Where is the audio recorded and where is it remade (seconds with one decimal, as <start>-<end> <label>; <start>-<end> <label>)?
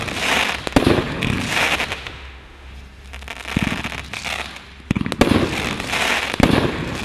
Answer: 0.0-1.9 recorded; 1.9-2.7 remade; 2.7-7.0 recorded